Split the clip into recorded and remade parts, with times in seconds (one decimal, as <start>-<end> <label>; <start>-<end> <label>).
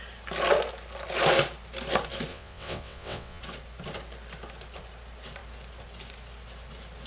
0.0-2.3 recorded; 2.3-3.4 remade; 3.4-7.1 recorded